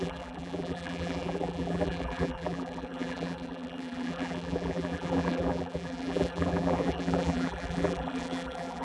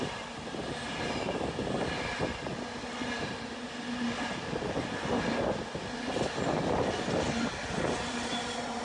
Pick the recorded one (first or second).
second